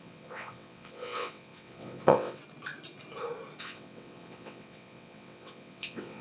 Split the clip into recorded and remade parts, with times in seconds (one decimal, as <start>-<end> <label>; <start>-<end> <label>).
0.0-2.4 remade; 2.4-3.6 recorded; 3.6-6.2 remade